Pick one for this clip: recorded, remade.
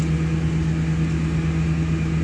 recorded